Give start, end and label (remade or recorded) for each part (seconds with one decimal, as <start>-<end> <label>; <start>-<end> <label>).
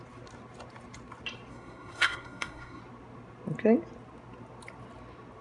0.0-1.5 recorded; 1.5-2.8 remade; 2.8-5.4 recorded